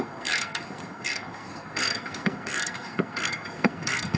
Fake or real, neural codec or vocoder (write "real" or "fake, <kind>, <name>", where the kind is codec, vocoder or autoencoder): fake, codec, SNAC